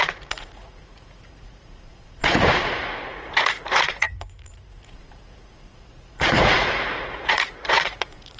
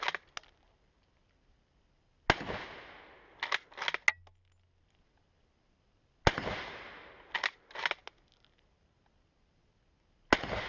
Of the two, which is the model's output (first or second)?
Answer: first